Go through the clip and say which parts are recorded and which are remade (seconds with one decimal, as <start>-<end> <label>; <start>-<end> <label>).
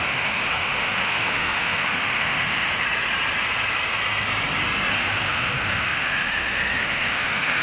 0.0-2.7 remade; 2.7-4.9 recorded; 4.9-7.6 remade